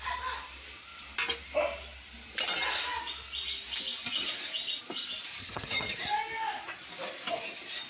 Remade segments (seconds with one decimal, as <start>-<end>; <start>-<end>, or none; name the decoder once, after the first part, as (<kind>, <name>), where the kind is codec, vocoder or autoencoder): 5.4-5.9 (vocoder, HiFi-GAN)